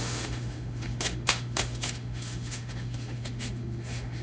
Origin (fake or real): fake